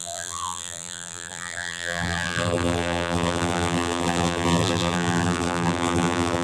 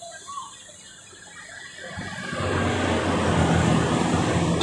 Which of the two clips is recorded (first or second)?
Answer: second